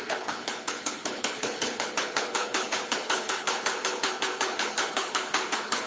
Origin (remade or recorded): remade